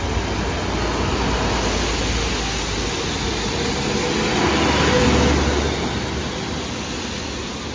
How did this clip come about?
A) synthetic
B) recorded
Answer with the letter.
B